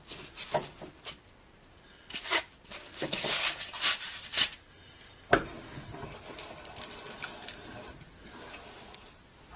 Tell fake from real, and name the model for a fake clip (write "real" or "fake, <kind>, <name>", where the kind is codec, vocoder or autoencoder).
real